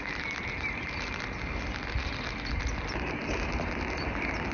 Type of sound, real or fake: real